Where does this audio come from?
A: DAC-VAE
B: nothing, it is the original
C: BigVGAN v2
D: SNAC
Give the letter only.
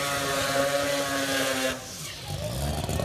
B